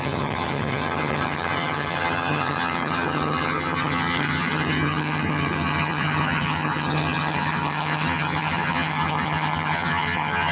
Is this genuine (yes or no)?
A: no